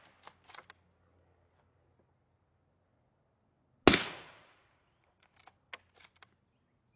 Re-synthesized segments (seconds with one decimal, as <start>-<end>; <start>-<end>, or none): 3.9-5.3